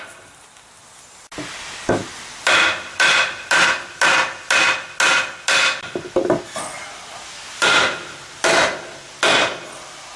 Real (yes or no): yes